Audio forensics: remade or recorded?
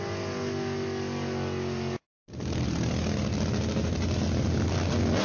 recorded